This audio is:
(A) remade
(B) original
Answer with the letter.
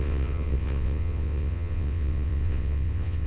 A